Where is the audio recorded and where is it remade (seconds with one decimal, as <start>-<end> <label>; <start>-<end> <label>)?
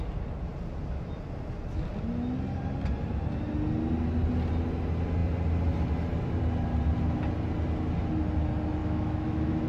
0.0-8.8 recorded; 8.8-9.7 remade